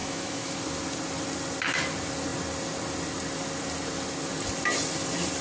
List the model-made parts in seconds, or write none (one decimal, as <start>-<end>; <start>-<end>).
0.0-0.6